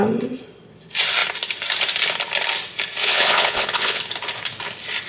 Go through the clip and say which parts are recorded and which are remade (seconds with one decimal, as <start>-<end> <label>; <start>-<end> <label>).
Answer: 0.0-3.0 recorded; 3.0-4.0 remade; 4.0-5.1 recorded